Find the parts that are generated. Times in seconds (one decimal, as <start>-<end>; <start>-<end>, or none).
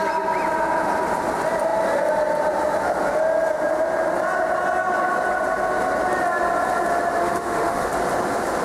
7.2-7.9